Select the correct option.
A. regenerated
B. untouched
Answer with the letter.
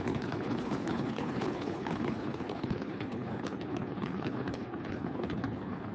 A